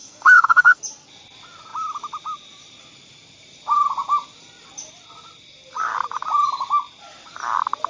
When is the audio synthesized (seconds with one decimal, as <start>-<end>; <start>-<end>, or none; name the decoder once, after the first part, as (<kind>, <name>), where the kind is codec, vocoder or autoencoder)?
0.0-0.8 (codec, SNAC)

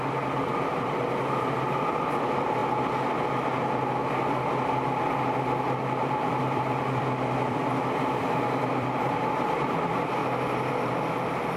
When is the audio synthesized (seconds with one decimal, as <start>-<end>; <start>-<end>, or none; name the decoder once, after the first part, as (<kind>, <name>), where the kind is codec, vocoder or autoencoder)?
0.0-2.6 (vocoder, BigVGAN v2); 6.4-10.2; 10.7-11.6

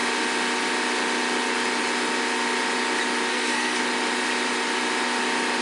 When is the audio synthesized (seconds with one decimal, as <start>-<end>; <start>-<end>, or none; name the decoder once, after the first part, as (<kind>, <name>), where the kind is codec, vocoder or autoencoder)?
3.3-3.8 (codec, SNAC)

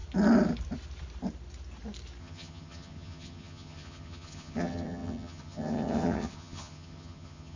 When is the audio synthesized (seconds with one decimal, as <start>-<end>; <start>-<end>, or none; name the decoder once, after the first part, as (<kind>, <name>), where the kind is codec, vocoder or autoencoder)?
2.2-7.6 (vocoder, HiFi-GAN)

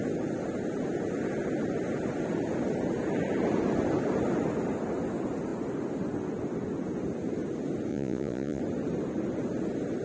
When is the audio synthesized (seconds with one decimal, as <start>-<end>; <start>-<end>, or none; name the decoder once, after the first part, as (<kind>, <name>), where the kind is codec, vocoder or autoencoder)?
7.9-8.6 (vocoder, Vocos)

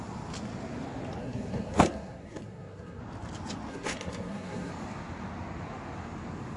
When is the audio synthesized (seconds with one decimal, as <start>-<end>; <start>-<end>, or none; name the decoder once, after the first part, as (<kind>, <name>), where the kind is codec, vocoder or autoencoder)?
1.2-3.0 (codec, SNAC); 3.7-4.7

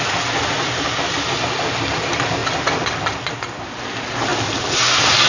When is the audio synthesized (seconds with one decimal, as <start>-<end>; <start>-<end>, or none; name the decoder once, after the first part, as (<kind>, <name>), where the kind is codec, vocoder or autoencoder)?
none